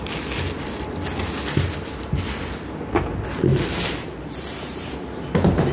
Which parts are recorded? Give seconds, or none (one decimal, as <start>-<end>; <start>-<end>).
0.0-3.5; 4.9-5.7